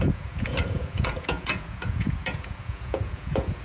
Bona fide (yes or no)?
no